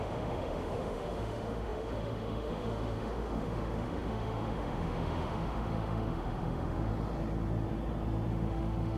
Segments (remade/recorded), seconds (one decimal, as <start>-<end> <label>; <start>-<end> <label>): 0.0-6.9 remade; 6.9-8.3 recorded; 8.3-9.0 remade